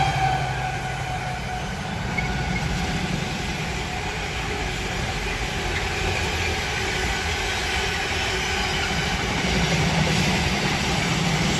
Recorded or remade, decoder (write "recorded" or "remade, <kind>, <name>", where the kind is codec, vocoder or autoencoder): recorded